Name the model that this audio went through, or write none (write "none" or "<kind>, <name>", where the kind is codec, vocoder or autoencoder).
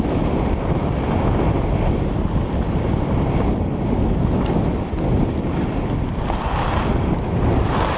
none